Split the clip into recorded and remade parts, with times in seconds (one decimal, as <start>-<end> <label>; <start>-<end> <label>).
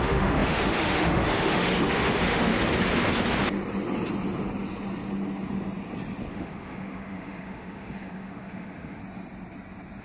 0.0-2.5 remade; 2.5-6.3 recorded; 6.3-9.0 remade; 9.0-10.0 recorded